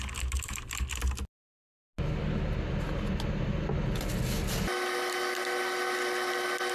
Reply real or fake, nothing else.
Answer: real